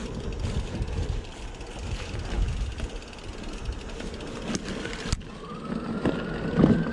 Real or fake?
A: real